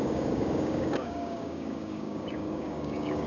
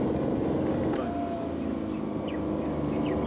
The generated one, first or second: first